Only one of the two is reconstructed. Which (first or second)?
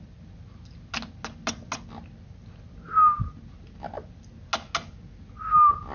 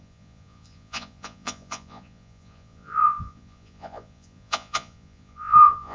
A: second